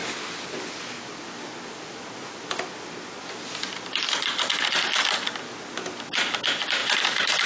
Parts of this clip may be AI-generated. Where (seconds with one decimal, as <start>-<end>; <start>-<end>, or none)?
3.9-4.6; 6.8-7.5